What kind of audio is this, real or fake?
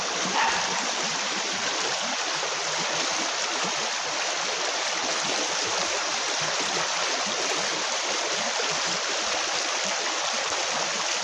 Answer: fake